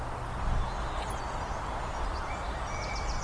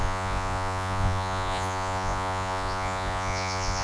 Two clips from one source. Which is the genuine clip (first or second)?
first